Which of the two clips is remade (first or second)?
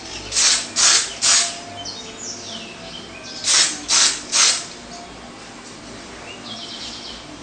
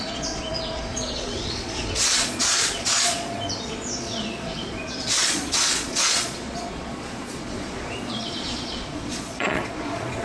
second